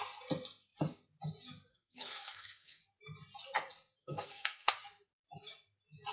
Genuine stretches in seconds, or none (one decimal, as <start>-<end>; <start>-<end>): 0.0-1.7; 2.8-4.0; 4.7-6.1

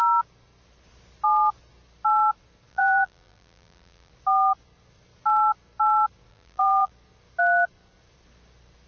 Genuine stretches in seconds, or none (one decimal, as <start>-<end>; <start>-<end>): 0.0-2.7; 4.1-6.3; 6.9-8.9

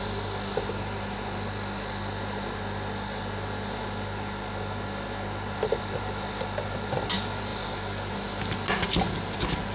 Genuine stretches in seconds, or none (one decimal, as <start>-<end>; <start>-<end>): 0.0-9.7

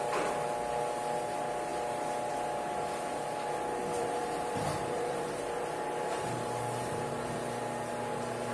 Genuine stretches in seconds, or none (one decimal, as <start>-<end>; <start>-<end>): 0.0-3.8; 7.3-8.5

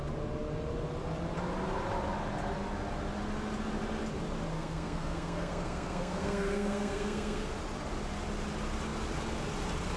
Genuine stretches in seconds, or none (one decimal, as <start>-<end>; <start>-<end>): 0.0-4.5; 7.5-10.0

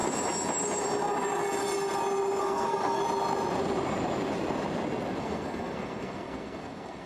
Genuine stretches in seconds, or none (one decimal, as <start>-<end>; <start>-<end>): 0.0-2.4; 3.0-5.2